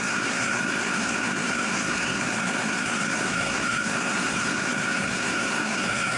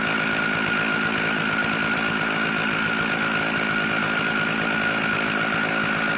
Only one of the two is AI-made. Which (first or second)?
first